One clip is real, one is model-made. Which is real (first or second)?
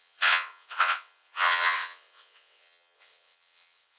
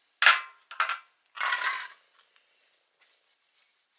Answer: second